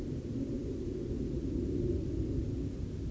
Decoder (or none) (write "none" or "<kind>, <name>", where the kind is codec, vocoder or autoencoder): none